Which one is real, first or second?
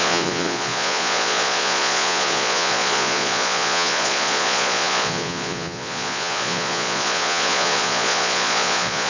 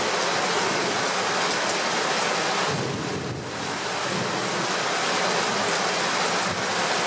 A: second